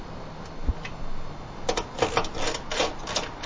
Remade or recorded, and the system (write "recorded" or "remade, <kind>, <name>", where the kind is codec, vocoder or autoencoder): recorded